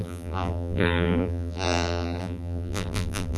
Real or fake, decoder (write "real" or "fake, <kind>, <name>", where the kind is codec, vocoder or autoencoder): fake, vocoder, BigVGAN v2